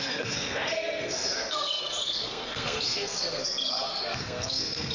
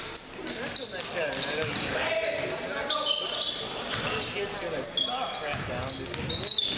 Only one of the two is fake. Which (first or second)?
first